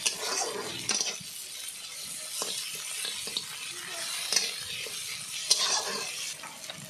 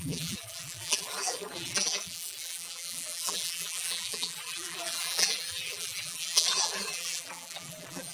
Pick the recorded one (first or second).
first